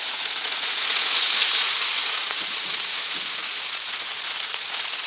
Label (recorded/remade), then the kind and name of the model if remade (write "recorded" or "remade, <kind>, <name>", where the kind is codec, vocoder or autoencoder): remade, vocoder, Vocos